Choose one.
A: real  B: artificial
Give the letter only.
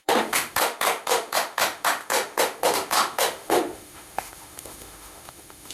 B